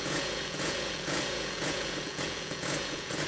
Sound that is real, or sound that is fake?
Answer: fake